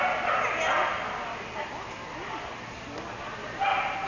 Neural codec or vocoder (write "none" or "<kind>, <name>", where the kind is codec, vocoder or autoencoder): none